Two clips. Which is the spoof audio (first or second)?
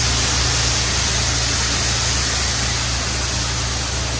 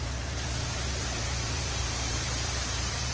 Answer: second